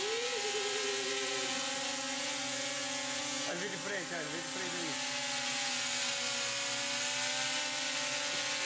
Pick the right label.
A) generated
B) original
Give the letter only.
B